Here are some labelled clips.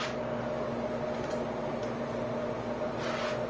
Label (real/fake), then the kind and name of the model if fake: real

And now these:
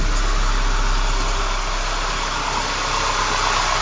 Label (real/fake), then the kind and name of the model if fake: real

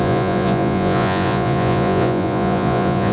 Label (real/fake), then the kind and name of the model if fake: fake, vocoder, Vocos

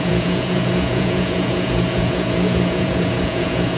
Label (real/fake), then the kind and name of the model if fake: fake, vocoder, Vocos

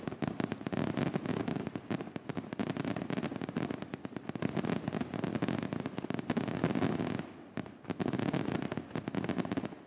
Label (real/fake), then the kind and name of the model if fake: real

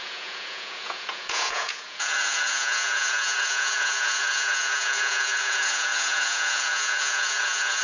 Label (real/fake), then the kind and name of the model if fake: fake, vocoder, Vocos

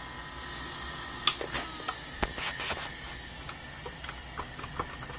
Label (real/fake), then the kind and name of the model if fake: real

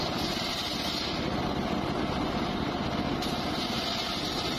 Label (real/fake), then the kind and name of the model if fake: real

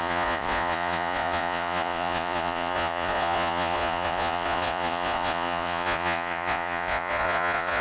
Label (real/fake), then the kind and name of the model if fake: fake, vocoder, Vocos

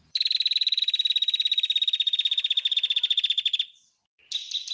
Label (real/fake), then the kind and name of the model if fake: real